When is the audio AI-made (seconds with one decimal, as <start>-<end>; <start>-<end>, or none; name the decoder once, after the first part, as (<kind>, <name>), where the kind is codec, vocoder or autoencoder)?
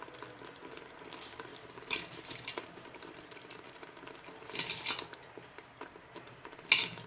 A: 1.5-3.7 (vocoder, BigVGAN v2)